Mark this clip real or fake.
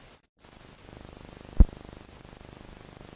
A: real